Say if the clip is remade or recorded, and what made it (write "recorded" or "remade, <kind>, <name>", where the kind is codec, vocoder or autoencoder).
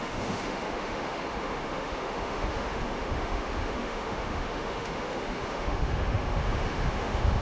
remade, autoencoder, DAC-VAE